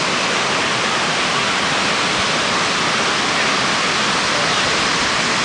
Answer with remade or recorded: recorded